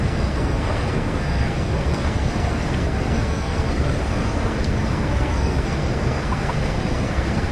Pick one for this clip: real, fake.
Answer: fake